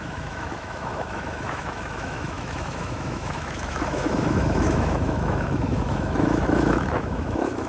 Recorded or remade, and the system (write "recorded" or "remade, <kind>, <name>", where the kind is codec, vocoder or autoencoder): remade, autoencoder, DAC-VAE